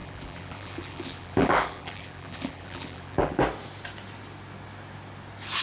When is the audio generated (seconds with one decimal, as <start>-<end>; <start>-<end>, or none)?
0.0-3.4